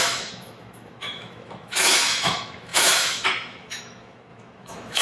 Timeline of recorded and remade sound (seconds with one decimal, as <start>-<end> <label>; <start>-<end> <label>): 0.0-5.0 remade

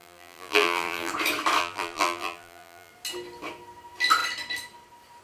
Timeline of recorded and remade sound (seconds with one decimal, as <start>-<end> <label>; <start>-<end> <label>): 0.0-1.1 remade; 1.1-1.6 recorded; 1.6-2.9 remade; 2.9-5.2 recorded

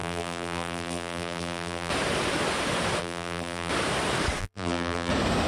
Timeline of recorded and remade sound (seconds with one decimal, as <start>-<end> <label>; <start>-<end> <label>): 0.0-1.9 remade; 1.9-3.0 recorded; 3.0-3.7 remade; 3.7-4.4 recorded; 4.4-5.1 remade; 5.1-5.5 recorded